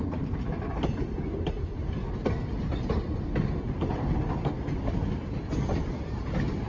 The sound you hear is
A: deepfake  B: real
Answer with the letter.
B